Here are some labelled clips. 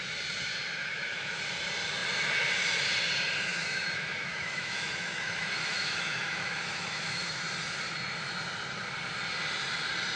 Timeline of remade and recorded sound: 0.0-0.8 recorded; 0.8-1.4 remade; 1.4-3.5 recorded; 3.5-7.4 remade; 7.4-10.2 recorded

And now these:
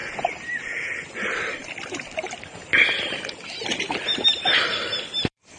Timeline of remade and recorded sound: 0.0-5.6 remade

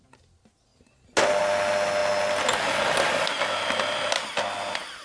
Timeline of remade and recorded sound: 0.0-5.0 recorded